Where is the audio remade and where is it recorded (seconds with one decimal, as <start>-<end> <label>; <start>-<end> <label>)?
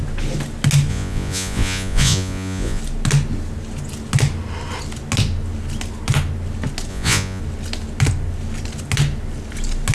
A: 0.0-0.9 recorded; 0.9-2.8 remade; 2.8-6.9 recorded; 6.9-7.4 remade; 7.4-9.9 recorded